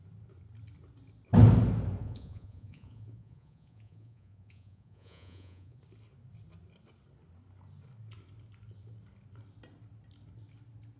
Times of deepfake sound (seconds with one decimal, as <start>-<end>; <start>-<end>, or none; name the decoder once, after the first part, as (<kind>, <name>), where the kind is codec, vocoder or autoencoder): 2.0-5.8 (vocoder, Vocos)